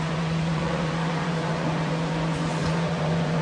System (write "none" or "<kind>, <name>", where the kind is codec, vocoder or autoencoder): vocoder, Vocos